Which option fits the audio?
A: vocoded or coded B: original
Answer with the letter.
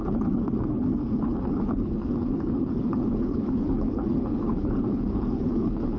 A